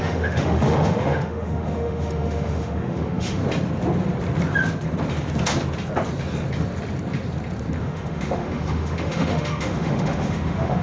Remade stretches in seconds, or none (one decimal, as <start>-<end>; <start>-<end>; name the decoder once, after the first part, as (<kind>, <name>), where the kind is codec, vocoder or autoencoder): 0.0-3.4 (autoencoder, DAC-VAE); 7.8-10.8